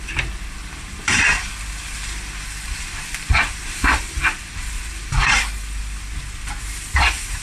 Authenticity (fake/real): fake